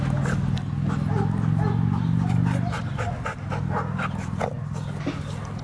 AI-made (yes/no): no